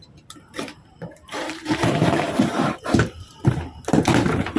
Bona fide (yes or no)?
no